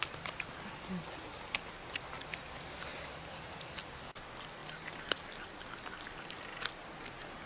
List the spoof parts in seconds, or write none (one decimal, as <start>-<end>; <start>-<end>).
none

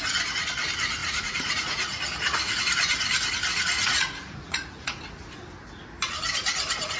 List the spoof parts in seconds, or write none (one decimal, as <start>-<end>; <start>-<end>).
1.0-2.6; 3.5-5.0

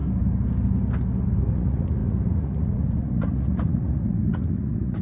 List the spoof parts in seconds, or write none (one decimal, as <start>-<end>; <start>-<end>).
1.4-5.0

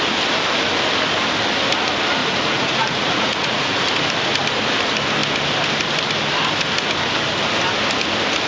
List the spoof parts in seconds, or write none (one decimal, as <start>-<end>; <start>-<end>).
2.2-3.8

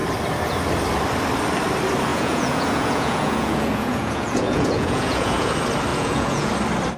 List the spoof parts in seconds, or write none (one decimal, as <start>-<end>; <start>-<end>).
2.1-5.5; 5.9-6.5

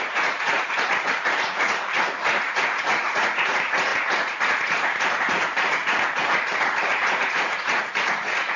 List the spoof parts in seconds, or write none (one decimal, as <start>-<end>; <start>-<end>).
0.0-8.6

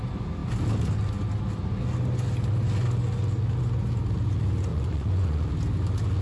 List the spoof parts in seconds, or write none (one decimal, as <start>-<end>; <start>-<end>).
4.7-5.5

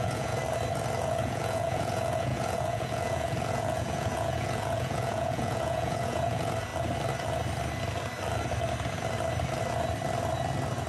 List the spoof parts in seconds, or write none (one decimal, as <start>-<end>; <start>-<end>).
0.0-0.4; 1.0-6.7